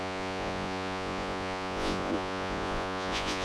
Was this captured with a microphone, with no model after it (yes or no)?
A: no